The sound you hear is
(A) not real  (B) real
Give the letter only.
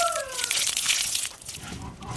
A